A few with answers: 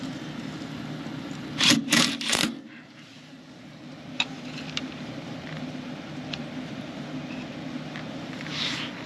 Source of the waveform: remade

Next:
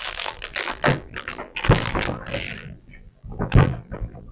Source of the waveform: remade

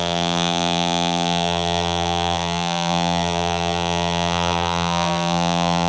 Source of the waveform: remade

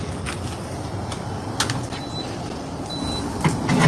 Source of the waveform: recorded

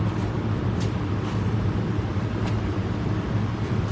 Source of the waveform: remade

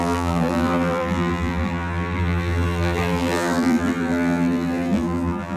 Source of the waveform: remade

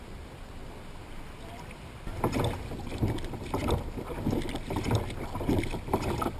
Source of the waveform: recorded